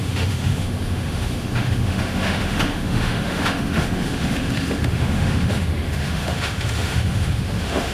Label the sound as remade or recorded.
remade